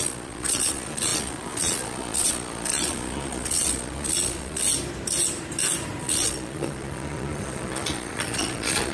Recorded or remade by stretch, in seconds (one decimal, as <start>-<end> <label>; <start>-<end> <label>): 0.0-4.6 remade; 4.6-6.0 recorded; 6.0-8.9 remade